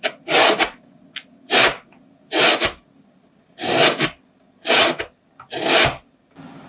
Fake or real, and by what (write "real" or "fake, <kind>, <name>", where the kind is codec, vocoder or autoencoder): real